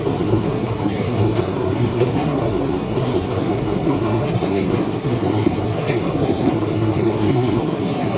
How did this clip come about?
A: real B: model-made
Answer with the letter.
B